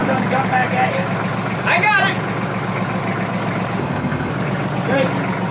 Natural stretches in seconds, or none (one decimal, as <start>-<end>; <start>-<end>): 0.0-3.8; 4.3-5.5